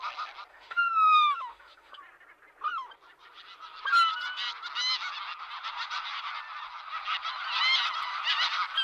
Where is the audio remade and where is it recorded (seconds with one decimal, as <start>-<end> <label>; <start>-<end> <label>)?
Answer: 0.0-0.5 recorded; 0.5-2.0 remade; 2.0-8.8 recorded

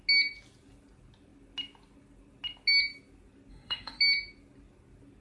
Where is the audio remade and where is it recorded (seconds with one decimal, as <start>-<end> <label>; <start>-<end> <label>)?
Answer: 0.0-3.5 recorded; 3.5-4.0 remade; 4.0-5.2 recorded

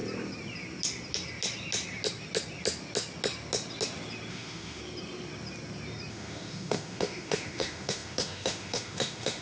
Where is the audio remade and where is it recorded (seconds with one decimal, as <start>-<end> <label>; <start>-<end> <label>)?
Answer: 0.0-4.3 recorded; 4.3-4.8 remade; 4.8-6.1 recorded; 6.1-9.4 remade

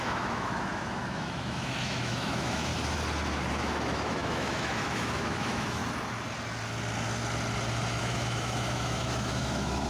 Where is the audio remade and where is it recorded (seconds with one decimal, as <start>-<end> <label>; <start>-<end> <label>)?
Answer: 0.0-2.7 remade; 2.7-3.5 recorded; 3.5-5.8 remade; 5.8-8.0 recorded; 8.0-9.9 remade